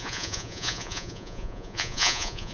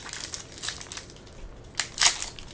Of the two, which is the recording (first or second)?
second